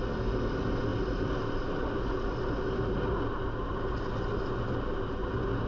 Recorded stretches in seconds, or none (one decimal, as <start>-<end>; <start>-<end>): 0.0-5.7